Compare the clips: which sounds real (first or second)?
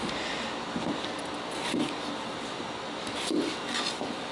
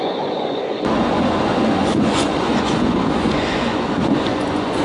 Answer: first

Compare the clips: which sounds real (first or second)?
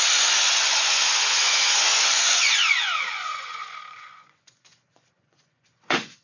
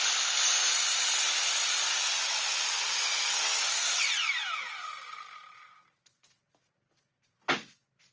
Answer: second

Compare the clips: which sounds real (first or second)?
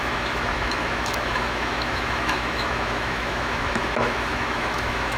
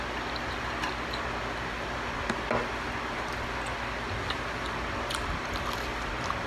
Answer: second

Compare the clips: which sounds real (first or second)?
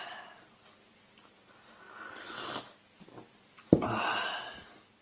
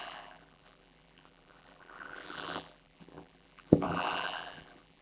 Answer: first